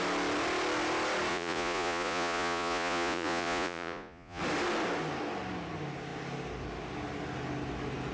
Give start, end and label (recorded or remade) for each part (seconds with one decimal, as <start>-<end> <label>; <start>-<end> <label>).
0.0-1.3 recorded; 1.3-4.4 remade; 4.4-8.1 recorded